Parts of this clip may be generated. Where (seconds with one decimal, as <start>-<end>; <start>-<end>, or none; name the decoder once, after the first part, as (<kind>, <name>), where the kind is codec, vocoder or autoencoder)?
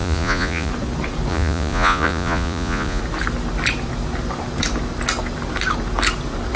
0.0-0.7 (vocoder, Vocos); 1.3-3.0